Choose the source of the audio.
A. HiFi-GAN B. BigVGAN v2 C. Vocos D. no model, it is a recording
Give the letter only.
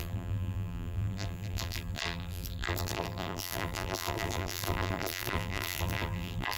B